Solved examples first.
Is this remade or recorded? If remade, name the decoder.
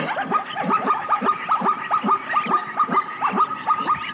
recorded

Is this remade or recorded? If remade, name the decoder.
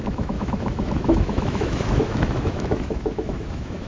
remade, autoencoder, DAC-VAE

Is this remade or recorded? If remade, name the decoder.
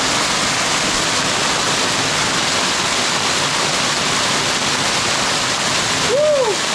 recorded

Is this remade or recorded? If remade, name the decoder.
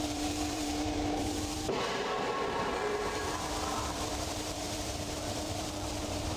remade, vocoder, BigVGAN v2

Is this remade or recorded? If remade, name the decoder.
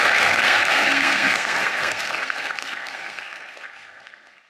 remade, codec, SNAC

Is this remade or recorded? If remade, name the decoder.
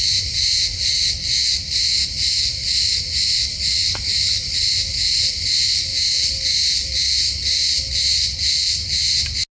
recorded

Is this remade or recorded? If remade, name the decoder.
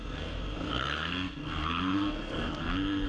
remade, codec, SNAC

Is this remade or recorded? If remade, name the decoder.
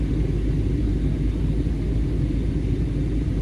recorded